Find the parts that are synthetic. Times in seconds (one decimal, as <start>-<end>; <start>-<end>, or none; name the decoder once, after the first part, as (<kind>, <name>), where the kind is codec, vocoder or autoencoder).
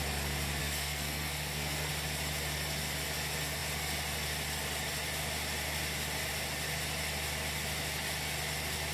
0.6-1.9 (codec, SNAC)